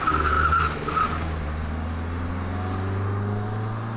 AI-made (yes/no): no